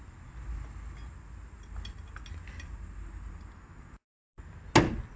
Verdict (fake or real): real